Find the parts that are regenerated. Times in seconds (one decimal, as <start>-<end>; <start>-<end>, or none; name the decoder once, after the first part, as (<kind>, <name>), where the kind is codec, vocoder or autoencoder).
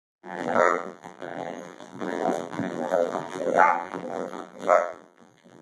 0.0-5.6 (vocoder, BigVGAN v2)